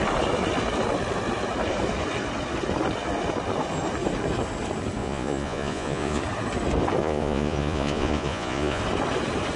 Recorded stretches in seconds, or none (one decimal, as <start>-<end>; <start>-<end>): 0.0-5.0; 6.2-7.0; 8.8-9.6